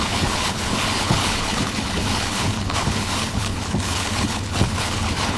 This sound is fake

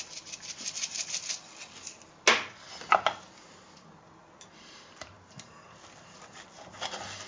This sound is real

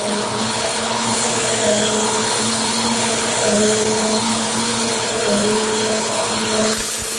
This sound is fake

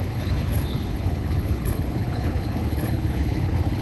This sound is fake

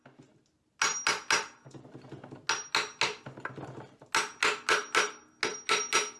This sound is real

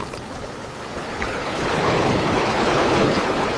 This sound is fake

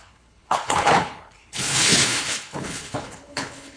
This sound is fake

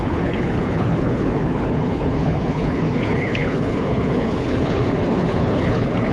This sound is fake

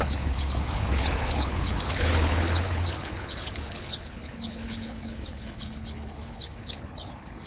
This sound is fake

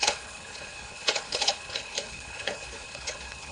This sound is fake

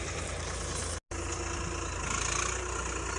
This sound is real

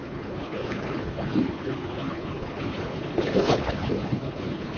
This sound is fake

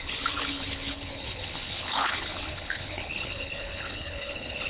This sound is fake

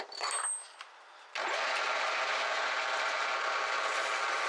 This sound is real